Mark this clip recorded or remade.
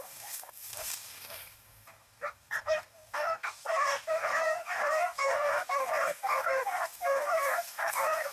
remade